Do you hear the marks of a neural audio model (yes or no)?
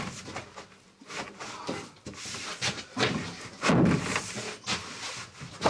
no